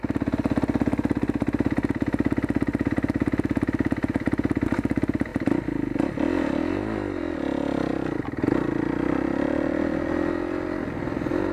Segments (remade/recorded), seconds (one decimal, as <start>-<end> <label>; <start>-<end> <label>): 0.0-11.5 recorded